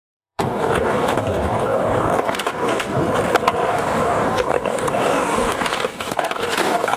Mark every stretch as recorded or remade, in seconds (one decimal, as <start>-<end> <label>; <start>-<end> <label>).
0.0-3.0 remade; 3.0-3.7 recorded; 3.7-7.0 remade